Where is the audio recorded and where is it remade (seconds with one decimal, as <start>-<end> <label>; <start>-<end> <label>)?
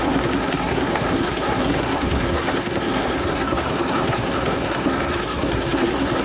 0.0-6.2 remade